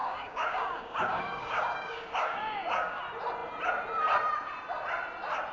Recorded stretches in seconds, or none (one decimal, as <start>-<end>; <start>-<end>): 3.0-5.5